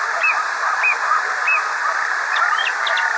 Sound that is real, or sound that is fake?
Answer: fake